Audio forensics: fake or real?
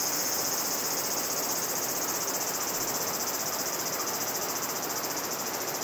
real